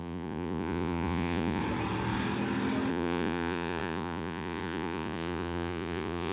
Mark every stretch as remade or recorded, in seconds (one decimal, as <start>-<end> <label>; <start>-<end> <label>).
0.0-1.6 remade; 1.6-2.9 recorded; 2.9-6.3 remade

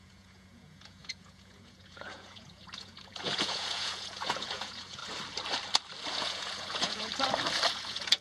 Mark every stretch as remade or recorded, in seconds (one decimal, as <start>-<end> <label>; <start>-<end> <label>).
0.0-5.0 remade; 5.0-6.1 recorded; 6.1-7.1 remade; 7.1-7.7 recorded; 7.7-8.2 remade

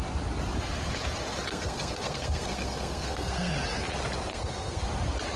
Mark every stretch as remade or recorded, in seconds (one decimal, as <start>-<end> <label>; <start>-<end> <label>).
0.0-1.5 recorded; 1.5-3.5 remade; 3.5-4.3 recorded; 4.3-4.8 remade; 4.8-5.4 recorded

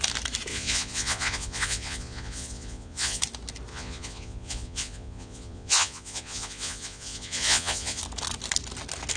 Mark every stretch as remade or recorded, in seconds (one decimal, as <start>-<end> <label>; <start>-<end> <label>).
0.0-0.5 recorded; 0.5-3.2 remade; 3.2-3.7 recorded; 3.7-8.0 remade; 8.0-9.2 recorded

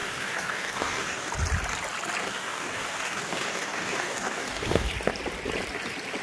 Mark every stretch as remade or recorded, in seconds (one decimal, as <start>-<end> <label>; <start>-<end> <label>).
0.0-1.3 remade; 1.3-2.2 recorded; 2.2-4.9 remade; 4.9-6.2 recorded

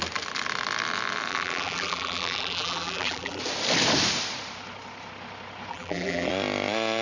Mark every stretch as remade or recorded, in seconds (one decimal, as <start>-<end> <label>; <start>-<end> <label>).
0.0-1.3 recorded; 1.3-3.4 remade; 3.4-5.7 recorded; 5.7-6.3 remade; 6.3-7.0 recorded

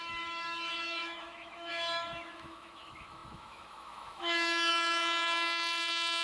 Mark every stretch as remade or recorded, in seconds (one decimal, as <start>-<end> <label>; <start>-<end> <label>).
0.0-6.2 remade